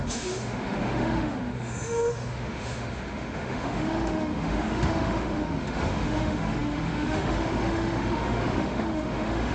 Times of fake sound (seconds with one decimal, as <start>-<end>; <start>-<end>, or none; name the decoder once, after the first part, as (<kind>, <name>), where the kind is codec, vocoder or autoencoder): 0.0-9.5 (autoencoder, DAC-VAE)